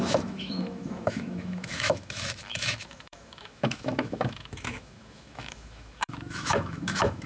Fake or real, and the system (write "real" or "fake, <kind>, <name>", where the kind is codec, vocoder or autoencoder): fake, autoencoder, DAC-VAE